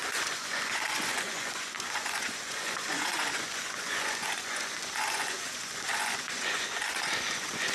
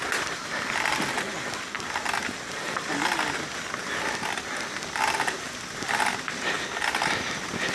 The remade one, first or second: first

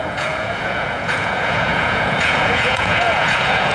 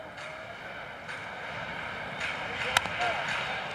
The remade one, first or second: first